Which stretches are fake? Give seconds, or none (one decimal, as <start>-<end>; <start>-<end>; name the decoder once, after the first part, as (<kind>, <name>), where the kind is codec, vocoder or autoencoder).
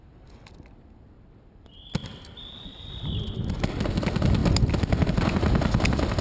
none